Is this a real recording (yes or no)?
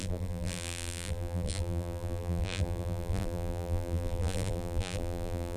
no